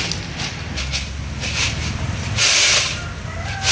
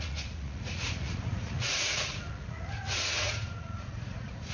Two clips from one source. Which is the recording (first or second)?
first